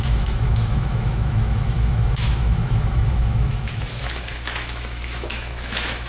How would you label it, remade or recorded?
remade